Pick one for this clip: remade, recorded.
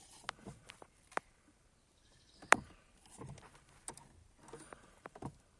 remade